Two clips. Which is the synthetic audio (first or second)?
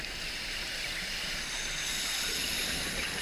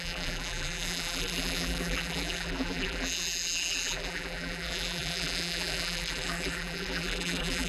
second